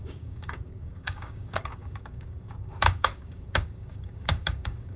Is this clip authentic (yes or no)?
no